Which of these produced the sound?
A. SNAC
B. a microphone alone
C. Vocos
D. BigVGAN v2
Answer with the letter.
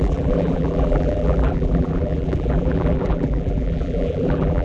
D